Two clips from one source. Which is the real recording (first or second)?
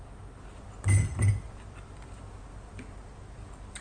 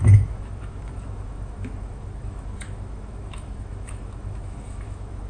first